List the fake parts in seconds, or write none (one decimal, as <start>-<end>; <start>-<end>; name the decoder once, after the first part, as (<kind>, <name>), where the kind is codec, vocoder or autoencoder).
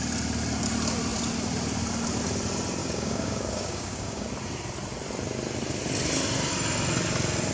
2.8-4.3 (codec, DAC)